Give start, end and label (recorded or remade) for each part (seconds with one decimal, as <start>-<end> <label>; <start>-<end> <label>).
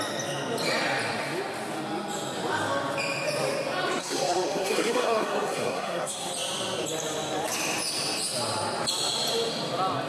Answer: 0.0-4.0 recorded; 4.0-6.3 remade; 6.3-10.1 recorded